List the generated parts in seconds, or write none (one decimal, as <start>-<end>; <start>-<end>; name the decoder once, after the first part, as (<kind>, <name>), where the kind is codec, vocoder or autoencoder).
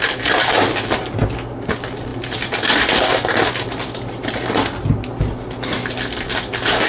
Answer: none